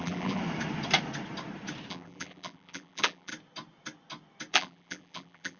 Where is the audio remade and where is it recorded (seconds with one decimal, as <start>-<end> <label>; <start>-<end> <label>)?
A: 0.0-0.4 remade; 0.4-1.9 recorded; 1.9-3.3 remade; 3.3-4.5 recorded; 4.5-5.6 remade